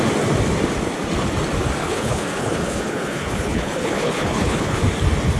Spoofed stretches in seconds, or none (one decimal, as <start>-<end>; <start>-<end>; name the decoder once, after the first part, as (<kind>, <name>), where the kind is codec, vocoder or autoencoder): 1.8-4.8 (codec, HILCodec)